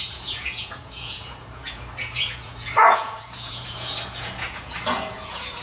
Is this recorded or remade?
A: remade